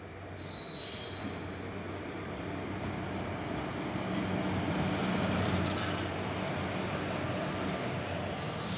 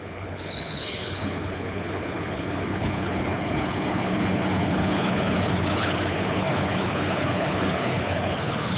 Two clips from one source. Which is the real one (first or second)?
first